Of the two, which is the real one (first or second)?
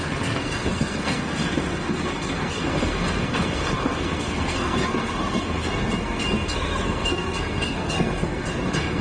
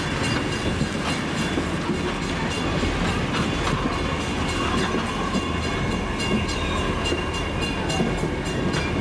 second